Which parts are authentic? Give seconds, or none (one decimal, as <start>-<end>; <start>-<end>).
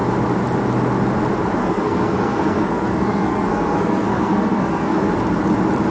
0.0-1.6; 5.1-5.9